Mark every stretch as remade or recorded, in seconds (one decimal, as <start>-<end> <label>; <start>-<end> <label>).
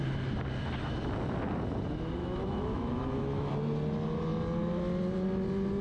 0.0-2.2 recorded; 2.2-3.5 remade; 3.5-5.8 recorded